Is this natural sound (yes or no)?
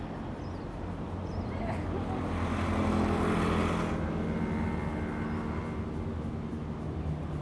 yes